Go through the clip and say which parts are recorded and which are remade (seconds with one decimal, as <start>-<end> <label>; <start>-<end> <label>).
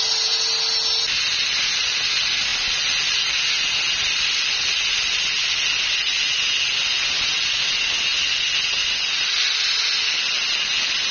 0.0-11.1 recorded